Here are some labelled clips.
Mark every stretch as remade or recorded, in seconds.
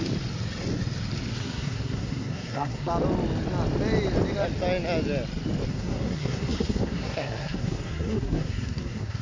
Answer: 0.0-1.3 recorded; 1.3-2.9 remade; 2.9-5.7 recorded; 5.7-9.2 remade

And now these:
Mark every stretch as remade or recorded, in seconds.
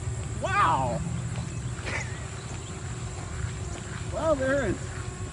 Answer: 0.0-5.3 recorded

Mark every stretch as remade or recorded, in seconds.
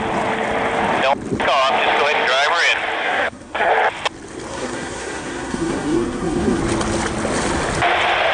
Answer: 0.0-3.0 recorded; 3.0-3.7 remade; 3.7-4.5 recorded; 4.5-6.6 remade; 6.6-8.3 recorded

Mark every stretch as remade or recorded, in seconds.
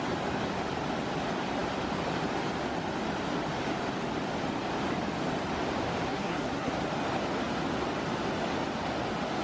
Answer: 0.0-6.1 recorded; 6.1-6.7 remade; 6.7-9.4 recorded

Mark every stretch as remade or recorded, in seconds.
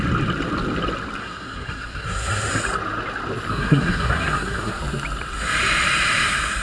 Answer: 0.0-1.2 recorded; 1.2-2.5 remade; 2.5-3.5 recorded; 3.5-4.8 remade; 4.8-6.6 recorded